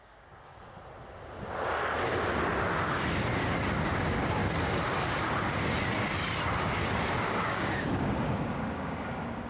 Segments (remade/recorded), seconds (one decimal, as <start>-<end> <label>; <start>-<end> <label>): 0.0-0.5 remade; 0.5-3.9 recorded; 3.9-4.4 remade; 4.4-7.3 recorded; 7.3-9.5 remade